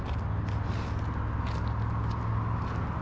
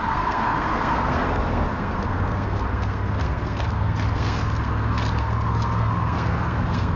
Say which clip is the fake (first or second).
second